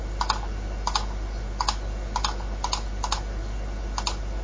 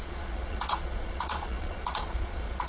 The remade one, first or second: second